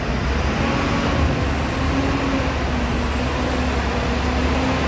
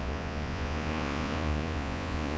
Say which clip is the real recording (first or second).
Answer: first